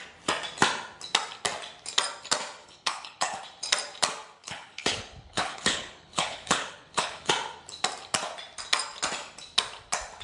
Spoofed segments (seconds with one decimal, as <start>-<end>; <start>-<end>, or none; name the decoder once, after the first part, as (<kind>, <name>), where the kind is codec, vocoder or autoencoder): 2.6-3.4 (codec, HILCodec); 4.4-7.3